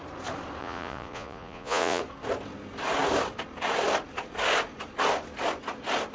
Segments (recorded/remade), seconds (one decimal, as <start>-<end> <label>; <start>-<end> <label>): 0.0-0.6 recorded; 0.6-2.0 remade; 2.0-6.1 recorded